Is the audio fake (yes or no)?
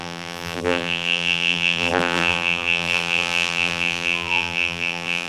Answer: yes